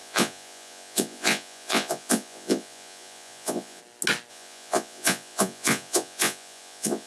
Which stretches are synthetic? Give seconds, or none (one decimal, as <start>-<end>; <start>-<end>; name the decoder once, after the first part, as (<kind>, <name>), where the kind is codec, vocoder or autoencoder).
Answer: 0.0-3.8 (vocoder, Vocos); 4.3-7.1